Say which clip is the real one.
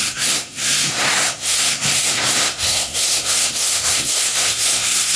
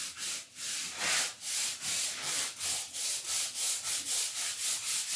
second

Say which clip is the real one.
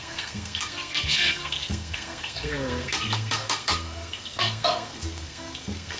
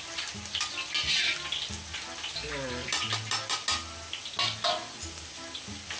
second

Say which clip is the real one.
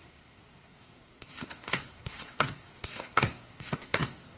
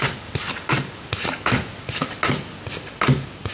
second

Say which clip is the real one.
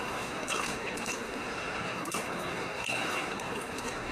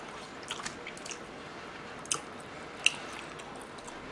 second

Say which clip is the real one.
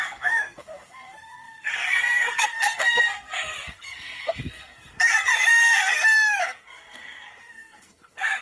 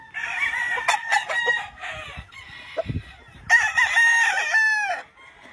second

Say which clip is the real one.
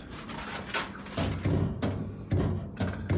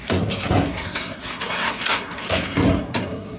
first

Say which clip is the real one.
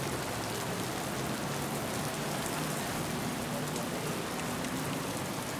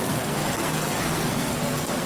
first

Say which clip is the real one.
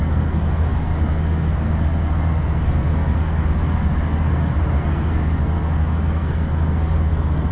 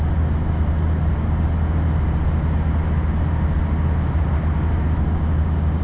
second